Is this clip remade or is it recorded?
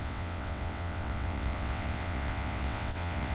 remade